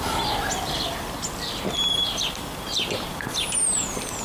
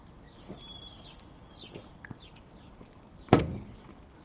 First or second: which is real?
first